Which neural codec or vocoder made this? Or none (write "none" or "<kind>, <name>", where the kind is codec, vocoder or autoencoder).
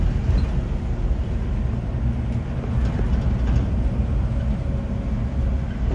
none